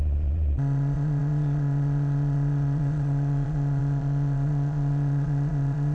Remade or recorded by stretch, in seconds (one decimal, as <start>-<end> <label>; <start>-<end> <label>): 0.0-5.9 remade